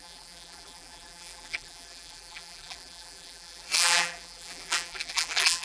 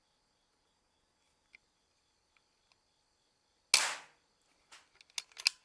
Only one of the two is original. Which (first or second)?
second